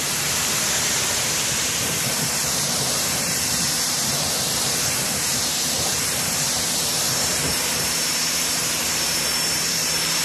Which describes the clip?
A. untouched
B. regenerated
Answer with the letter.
B